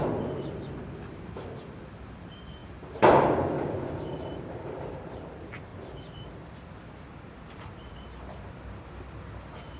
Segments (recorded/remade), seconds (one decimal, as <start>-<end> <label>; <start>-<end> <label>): 0.0-9.8 recorded